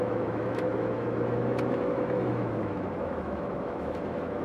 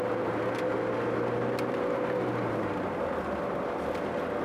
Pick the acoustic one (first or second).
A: second